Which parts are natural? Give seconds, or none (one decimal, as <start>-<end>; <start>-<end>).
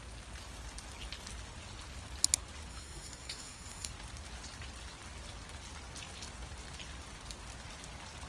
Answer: 0.0-2.7; 3.9-8.3